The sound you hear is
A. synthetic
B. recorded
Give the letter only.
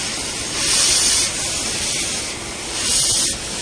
B